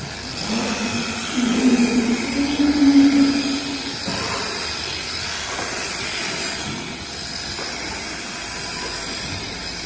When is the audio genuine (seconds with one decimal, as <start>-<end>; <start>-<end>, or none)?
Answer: 0.0-9.9